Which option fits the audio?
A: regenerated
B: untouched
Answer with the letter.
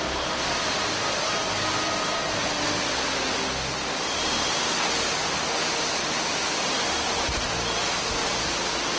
B